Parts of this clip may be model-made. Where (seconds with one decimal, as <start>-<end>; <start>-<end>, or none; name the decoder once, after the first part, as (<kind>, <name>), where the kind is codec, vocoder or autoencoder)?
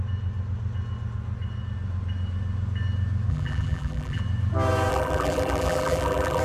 3.3-4.2 (vocoder, BigVGAN v2); 4.9-6.4